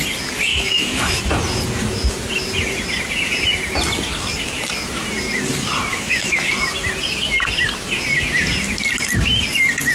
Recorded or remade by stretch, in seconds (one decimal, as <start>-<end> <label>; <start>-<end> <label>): 0.0-0.5 recorded; 0.5-1.2 remade; 1.2-5.9 recorded; 5.9-6.5 remade; 6.5-9.9 recorded